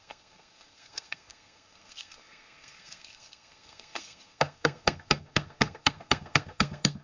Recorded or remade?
remade